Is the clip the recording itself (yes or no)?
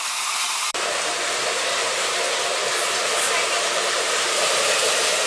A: no